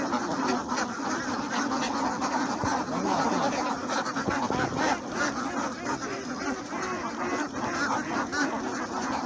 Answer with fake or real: real